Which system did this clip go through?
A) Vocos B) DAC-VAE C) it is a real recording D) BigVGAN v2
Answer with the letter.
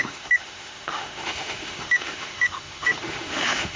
B